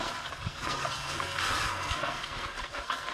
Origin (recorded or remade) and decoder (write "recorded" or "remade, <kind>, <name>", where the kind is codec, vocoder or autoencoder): remade, codec, SNAC